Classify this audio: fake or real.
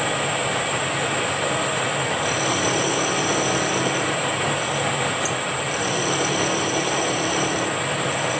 fake